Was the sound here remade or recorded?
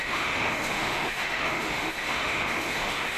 remade